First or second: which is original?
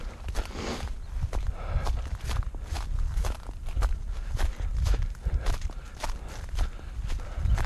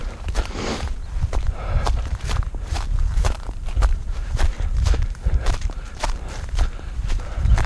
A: first